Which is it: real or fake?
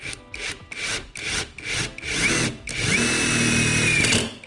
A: real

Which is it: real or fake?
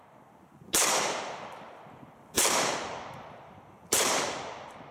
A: fake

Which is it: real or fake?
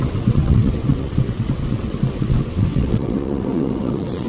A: fake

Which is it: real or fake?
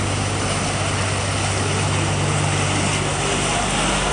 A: real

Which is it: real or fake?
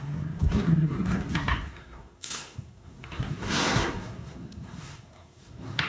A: fake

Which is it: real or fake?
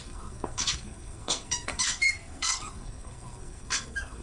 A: fake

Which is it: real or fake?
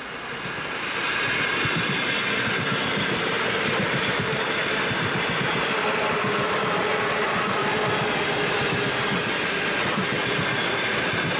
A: real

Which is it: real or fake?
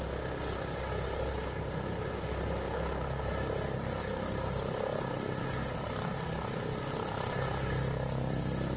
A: real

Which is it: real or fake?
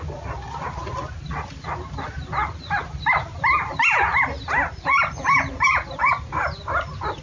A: real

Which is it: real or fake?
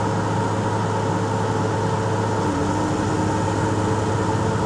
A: real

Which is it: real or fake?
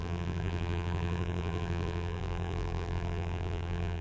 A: fake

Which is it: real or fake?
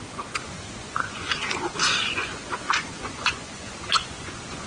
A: fake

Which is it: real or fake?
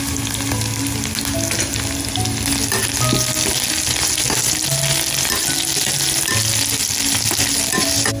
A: real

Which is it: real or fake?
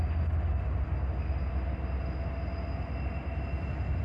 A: real